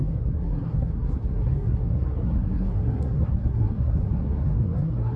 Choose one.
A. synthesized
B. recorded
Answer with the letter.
A